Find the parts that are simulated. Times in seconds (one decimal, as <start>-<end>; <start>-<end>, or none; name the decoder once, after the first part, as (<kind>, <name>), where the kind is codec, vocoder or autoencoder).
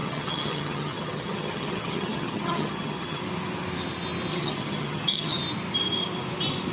0.0-3.2 (vocoder, HiFi-GAN); 4.3-5.4